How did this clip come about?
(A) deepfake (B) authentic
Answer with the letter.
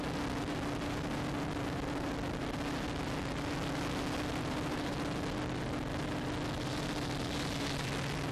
B